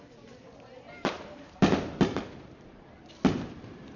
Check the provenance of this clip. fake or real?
real